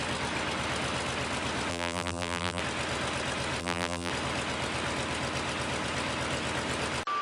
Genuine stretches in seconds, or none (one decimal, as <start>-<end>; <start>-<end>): 0.0-1.7; 2.6-3.6; 4.1-7.2